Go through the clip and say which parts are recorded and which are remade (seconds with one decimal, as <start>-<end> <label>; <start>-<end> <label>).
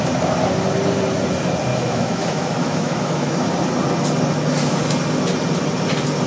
0.0-1.7 recorded; 1.7-3.3 remade; 3.3-6.3 recorded